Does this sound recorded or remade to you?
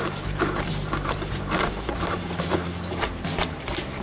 remade